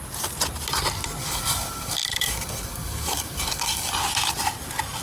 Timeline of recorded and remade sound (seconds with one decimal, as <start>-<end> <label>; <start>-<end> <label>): 0.0-1.2 recorded; 1.2-3.9 remade; 3.9-5.0 recorded